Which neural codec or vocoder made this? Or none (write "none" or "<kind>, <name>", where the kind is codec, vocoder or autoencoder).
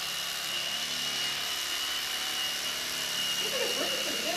vocoder, BigVGAN v2